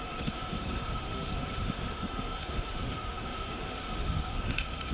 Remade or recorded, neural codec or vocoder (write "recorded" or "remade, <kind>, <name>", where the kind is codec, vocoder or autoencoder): remade, autoencoder, DAC-VAE